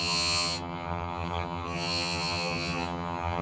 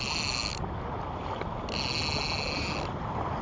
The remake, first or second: first